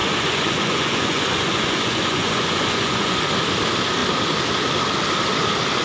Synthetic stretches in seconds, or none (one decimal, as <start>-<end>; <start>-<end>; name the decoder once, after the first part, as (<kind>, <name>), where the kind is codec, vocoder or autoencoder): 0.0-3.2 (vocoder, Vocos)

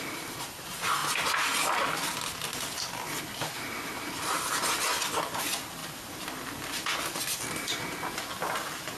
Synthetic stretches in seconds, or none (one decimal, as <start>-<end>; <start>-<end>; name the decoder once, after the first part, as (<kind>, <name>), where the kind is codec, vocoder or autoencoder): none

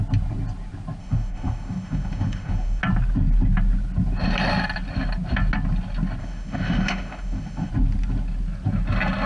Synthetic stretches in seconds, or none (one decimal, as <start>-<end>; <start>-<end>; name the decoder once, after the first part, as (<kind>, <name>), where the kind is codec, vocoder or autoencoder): 1.0-2.8 (autoencoder, DAC-VAE); 6.2-7.7